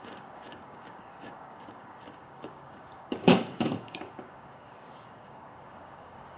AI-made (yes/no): yes